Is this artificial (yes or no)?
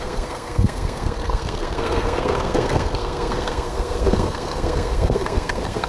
yes